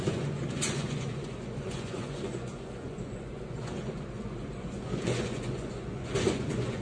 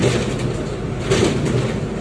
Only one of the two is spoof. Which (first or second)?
first